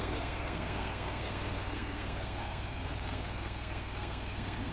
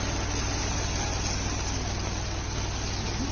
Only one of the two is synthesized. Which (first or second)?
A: first